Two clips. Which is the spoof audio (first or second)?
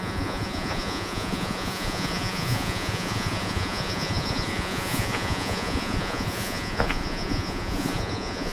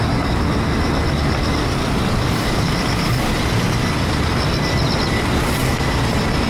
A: first